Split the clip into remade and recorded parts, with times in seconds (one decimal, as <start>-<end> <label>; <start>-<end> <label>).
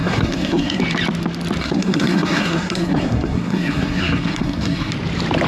0.0-0.8 remade; 0.8-1.6 recorded; 1.6-4.9 remade; 4.9-5.5 recorded